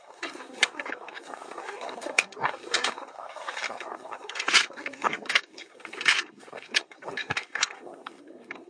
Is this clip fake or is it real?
fake